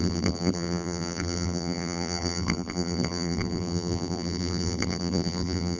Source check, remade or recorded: remade